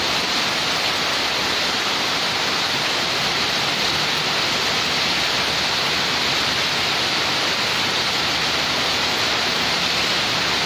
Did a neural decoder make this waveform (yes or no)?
yes